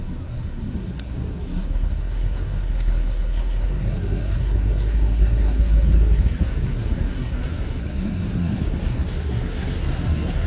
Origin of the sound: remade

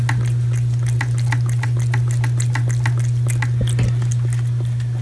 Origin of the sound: recorded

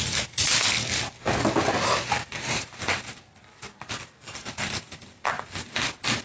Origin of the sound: recorded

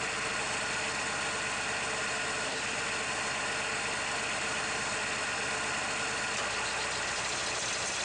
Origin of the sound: recorded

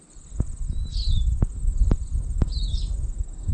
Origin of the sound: recorded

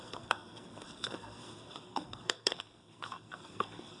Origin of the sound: remade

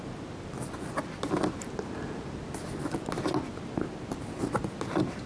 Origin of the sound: recorded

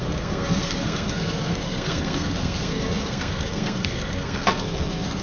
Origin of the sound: remade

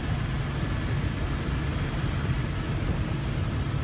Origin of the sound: recorded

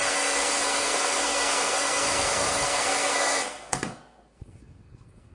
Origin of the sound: remade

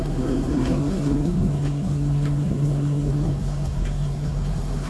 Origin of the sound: remade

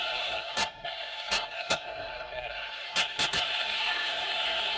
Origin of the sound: remade